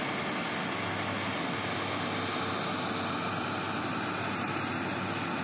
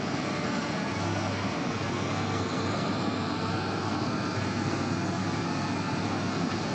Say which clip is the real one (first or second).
first